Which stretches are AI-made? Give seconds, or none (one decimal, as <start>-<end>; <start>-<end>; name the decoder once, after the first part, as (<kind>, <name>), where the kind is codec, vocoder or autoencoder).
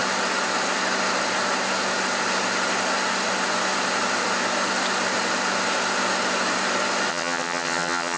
7.1-8.2 (vocoder, HiFi-GAN)